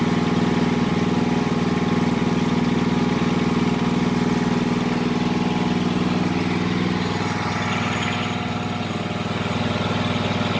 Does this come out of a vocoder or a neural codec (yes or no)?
no